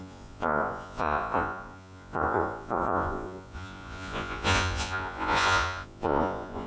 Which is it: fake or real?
fake